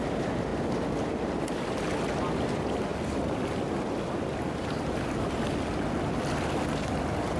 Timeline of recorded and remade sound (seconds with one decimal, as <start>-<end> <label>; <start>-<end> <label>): 0.0-7.4 recorded